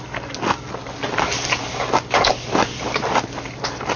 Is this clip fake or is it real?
real